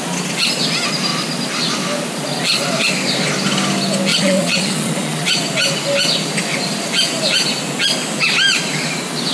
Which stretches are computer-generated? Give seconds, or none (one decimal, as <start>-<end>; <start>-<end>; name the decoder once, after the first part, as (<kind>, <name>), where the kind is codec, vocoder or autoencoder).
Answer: 4.1-5.4 (vocoder, Vocos)